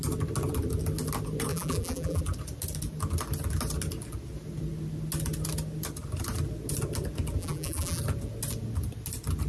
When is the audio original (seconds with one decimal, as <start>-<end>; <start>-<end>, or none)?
0.0-1.5; 2.2-7.4; 8.0-9.5